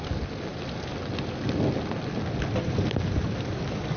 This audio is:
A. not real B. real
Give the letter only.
B